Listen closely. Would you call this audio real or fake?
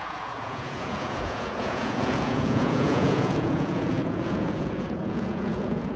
fake